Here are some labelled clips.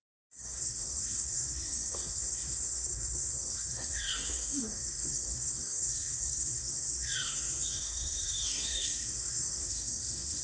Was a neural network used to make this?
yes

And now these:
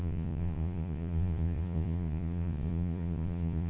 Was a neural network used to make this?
yes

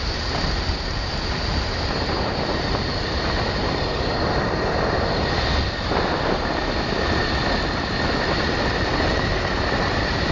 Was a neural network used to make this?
no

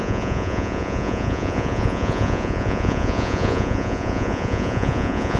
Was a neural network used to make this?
yes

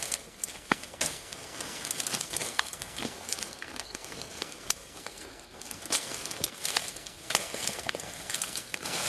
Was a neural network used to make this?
yes